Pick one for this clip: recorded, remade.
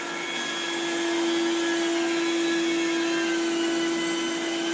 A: recorded